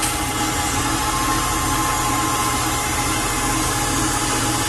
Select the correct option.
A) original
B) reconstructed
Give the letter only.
A